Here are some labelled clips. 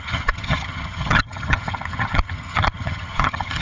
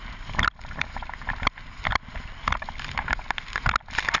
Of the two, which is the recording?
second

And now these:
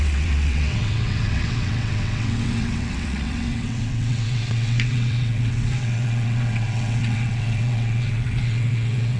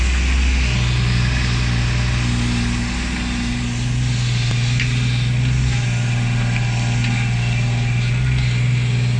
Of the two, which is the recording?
second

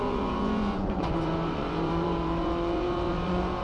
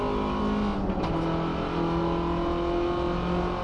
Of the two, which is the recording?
second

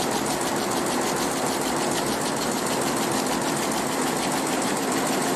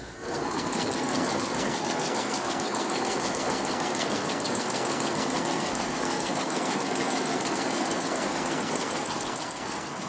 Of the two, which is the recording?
first